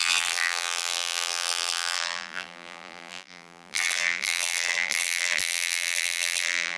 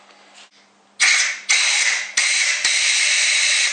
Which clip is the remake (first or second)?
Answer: first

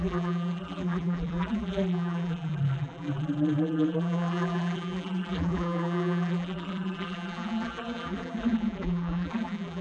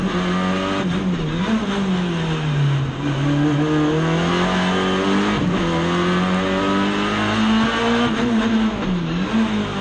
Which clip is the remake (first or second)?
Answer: first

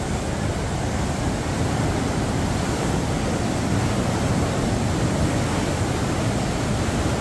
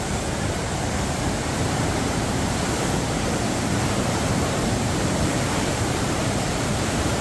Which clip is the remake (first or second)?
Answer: second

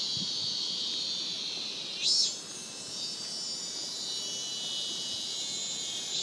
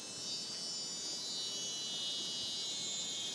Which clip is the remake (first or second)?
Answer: first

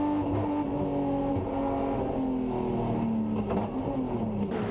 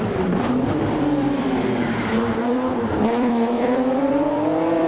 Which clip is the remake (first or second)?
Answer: second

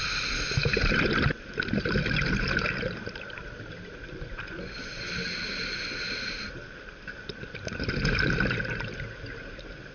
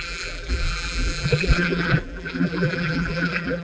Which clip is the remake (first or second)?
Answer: second